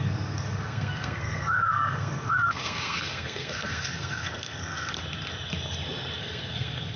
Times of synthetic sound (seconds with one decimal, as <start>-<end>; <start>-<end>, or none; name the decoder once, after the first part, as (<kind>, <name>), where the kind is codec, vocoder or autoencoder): 0.0-5.0 (codec, SNAC); 6.2-7.0